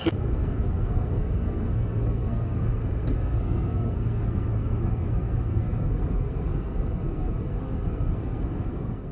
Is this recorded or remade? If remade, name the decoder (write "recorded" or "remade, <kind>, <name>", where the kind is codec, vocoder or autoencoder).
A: remade, codec, SNAC